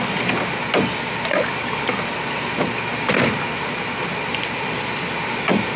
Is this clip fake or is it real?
real